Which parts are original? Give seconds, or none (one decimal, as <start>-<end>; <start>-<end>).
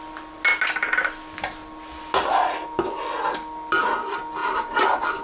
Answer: 0.0-5.2